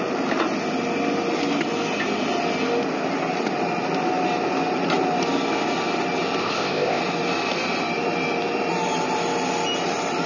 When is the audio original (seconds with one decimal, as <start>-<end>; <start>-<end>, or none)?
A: 0.0-6.4; 7.0-10.3